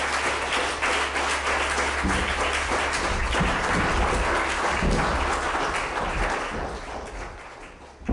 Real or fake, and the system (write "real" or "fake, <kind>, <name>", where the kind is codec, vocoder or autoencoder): real